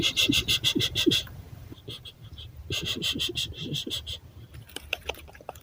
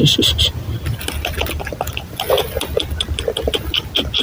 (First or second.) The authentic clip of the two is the second